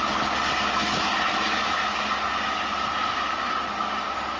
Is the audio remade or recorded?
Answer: recorded